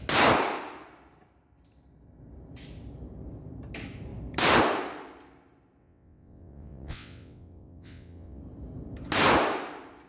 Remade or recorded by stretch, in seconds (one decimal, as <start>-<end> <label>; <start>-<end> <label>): 0.0-5.8 recorded; 5.8-8.4 remade; 8.4-10.1 recorded